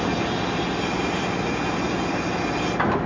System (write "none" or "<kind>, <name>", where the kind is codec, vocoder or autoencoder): none